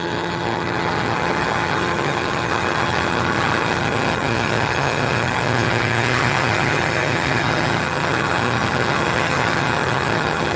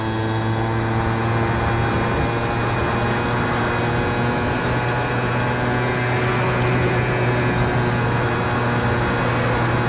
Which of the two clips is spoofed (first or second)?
first